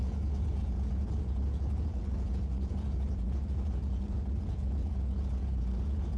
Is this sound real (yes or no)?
no